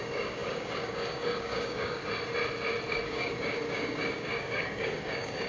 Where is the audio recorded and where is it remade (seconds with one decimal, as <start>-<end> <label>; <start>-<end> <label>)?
0.0-2.0 remade; 2.0-2.9 recorded; 2.9-5.5 remade